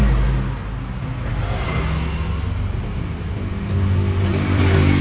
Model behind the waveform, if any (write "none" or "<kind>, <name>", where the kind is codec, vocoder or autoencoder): none